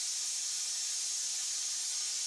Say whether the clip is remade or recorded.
recorded